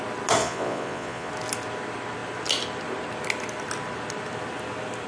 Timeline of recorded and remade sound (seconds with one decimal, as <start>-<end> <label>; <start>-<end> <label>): 0.0-0.4 recorded; 0.4-1.3 remade; 1.3-5.1 recorded